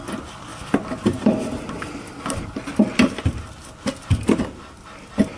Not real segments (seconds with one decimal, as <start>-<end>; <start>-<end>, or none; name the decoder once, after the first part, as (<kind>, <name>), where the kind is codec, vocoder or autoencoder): none